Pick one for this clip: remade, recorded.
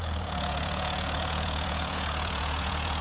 remade